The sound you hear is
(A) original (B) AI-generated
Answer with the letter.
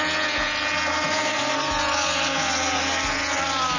A